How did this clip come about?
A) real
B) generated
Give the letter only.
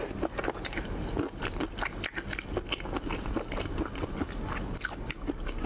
A